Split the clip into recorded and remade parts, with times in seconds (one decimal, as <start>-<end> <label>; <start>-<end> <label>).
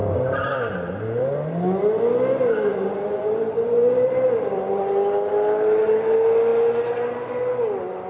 0.0-0.9 remade; 0.9-2.7 recorded; 2.7-4.8 remade; 4.8-8.1 recorded